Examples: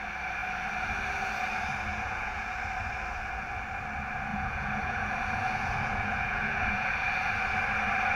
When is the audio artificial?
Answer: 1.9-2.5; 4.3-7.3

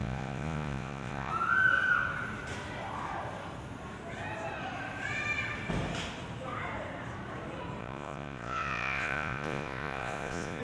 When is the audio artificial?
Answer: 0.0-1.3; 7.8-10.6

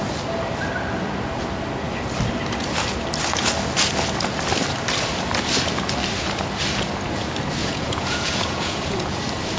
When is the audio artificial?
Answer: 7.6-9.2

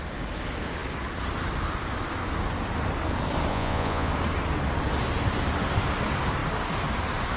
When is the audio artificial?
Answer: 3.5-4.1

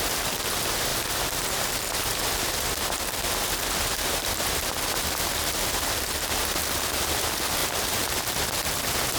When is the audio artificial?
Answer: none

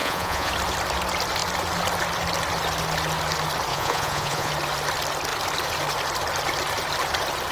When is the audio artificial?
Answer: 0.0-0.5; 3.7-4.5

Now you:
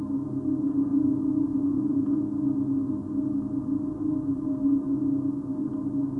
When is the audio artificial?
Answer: 0.9-2.2